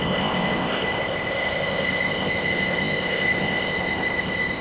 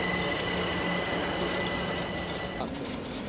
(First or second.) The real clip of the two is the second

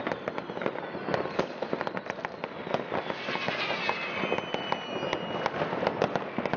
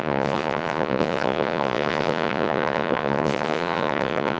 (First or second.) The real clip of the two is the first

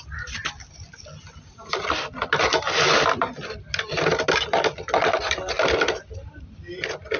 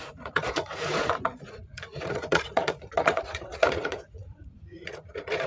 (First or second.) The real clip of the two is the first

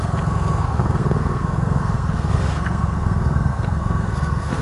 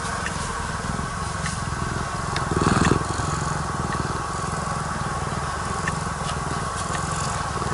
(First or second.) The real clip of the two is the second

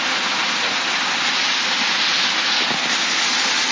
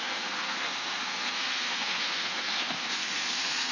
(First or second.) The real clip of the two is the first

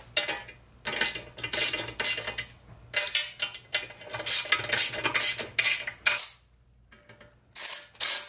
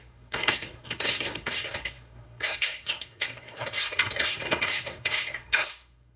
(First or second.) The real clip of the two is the first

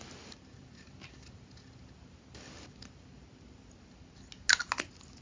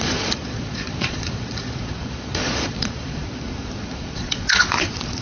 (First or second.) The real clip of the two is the first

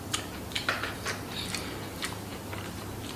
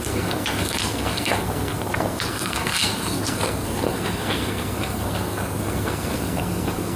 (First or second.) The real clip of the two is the first